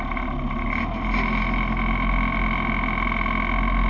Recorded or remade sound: recorded